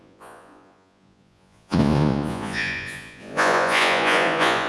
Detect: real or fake fake